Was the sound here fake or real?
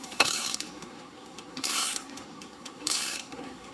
fake